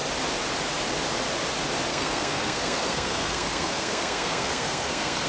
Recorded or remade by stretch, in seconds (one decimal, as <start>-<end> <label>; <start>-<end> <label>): 0.0-1.9 recorded; 1.9-5.3 remade